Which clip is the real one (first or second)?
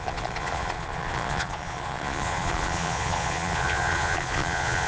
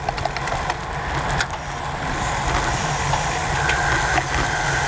second